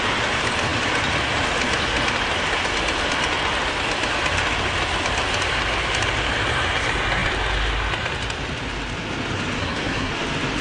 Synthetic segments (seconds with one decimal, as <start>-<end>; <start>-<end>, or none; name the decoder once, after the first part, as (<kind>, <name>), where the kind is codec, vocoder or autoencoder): 9.6-10.1 (codec, SNAC)

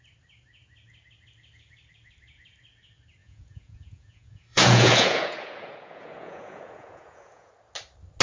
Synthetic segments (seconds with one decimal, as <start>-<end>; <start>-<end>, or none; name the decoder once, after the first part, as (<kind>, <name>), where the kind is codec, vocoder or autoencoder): 3.2-7.5 (vocoder, Vocos)

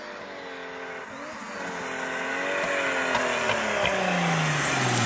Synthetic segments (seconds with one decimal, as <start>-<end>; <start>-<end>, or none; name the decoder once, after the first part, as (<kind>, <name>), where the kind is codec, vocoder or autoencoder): none

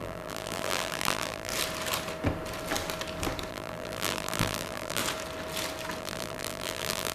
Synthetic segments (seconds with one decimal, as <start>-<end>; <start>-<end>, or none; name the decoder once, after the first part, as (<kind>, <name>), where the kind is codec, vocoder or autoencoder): 0.0-1.5 (vocoder, BigVGAN v2); 3.5-5.0; 6.0-7.1

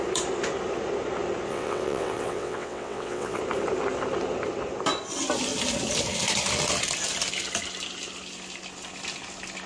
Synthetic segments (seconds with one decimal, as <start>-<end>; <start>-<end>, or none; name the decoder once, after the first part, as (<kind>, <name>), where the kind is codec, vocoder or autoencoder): 1.5-3.4 (vocoder, WaveNeXt)

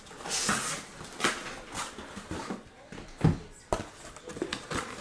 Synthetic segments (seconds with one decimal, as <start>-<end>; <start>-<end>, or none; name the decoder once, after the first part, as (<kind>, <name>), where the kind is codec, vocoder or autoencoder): none